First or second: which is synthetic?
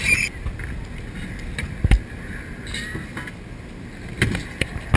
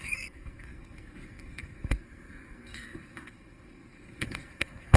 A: second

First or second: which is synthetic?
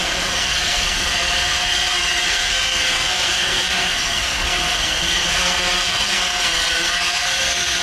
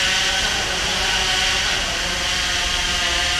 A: first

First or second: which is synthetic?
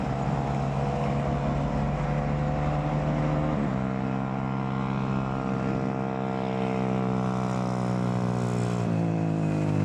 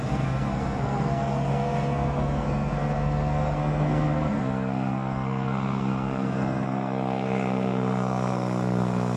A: second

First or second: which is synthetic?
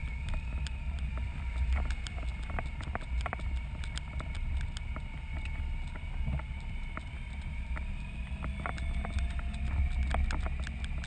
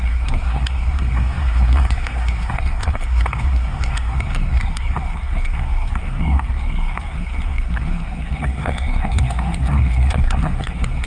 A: second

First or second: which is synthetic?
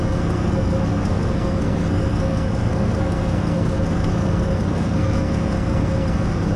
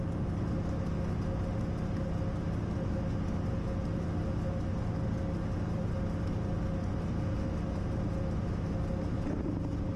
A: first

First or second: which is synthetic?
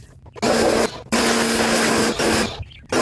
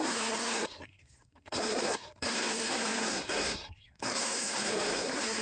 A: second